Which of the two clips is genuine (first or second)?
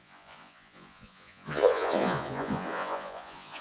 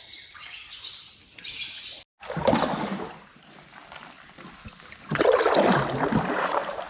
second